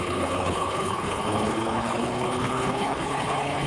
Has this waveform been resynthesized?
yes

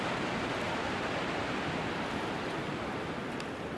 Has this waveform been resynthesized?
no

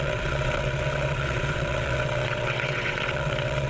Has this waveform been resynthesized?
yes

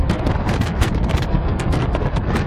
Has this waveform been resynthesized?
yes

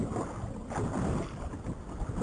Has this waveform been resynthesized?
no